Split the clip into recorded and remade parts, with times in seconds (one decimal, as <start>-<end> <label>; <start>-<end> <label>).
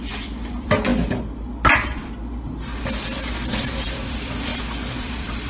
0.0-0.9 remade; 0.9-2.0 recorded; 2.0-2.7 remade; 2.7-3.7 recorded; 3.7-5.5 remade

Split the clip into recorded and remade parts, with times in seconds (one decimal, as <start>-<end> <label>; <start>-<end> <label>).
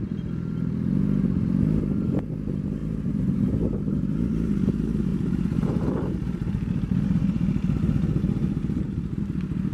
0.0-2.8 recorded; 2.8-4.5 remade; 4.5-5.1 recorded; 5.1-9.2 remade; 9.2-9.7 recorded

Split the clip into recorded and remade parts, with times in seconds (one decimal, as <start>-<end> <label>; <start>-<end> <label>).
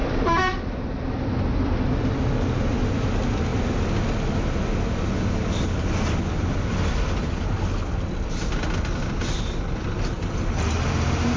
0.0-11.4 recorded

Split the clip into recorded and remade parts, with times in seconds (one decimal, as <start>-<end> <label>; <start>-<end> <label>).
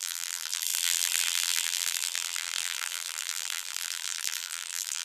0.0-5.0 remade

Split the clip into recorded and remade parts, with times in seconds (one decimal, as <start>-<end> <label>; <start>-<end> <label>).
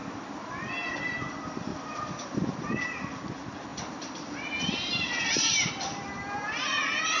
0.0-1.7 recorded; 1.7-3.2 remade; 3.2-3.7 recorded; 3.7-5.7 remade; 5.7-7.2 recorded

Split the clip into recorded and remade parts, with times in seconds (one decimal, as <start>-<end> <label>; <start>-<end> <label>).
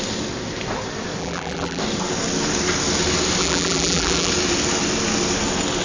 0.0-1.2 recorded; 1.2-1.8 remade; 1.8-3.4 recorded; 3.4-4.3 remade; 4.3-5.8 recorded